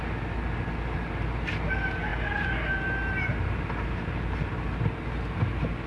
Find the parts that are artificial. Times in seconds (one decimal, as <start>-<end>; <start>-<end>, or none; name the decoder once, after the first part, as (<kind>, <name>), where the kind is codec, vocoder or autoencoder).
none